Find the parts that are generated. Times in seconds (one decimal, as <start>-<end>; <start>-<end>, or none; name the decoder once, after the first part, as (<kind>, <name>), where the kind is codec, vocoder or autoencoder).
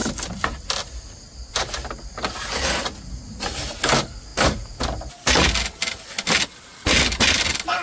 none